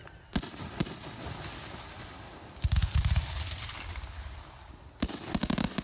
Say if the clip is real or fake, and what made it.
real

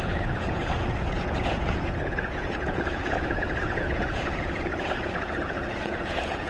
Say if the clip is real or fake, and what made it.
fake, vocoder, Vocos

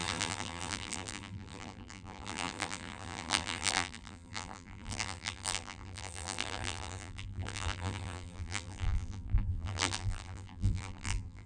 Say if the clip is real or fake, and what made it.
fake, vocoder, BigVGAN v2